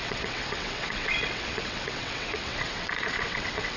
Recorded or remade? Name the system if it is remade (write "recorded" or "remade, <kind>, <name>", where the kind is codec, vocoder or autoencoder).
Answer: remade, vocoder, WaveNeXt